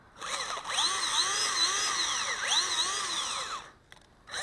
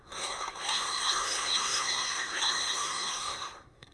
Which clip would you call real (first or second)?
first